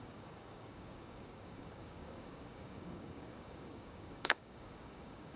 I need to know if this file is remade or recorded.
remade